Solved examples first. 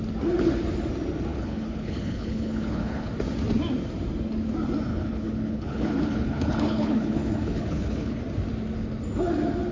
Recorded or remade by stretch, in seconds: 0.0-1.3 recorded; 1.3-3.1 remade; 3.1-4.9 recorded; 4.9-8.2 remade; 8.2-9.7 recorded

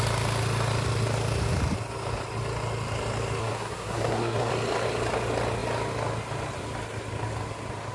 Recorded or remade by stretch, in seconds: 0.0-3.4 recorded; 3.4-4.5 remade; 4.5-7.9 recorded

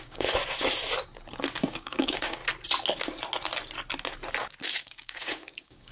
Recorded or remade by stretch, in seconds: 0.0-0.4 remade; 0.4-1.5 recorded; 1.5-2.4 remade; 2.4-4.7 recorded; 4.7-5.9 remade

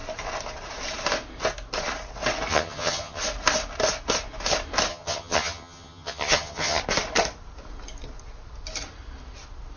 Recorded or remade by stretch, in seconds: 0.0-2.5 recorded; 2.5-3.2 remade; 3.2-4.9 recorded; 4.9-6.8 remade; 6.8-9.8 recorded

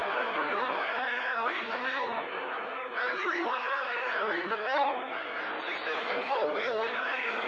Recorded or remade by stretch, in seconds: 0.0-5.4 remade; 5.4-6.0 recorded; 6.0-7.5 remade

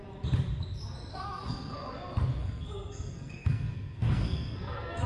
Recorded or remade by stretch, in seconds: 0.0-1.1 recorded; 1.1-1.9 remade; 1.9-2.4 recorded; 2.4-5.1 remade

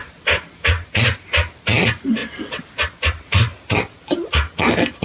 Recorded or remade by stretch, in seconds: 0.0-5.0 recorded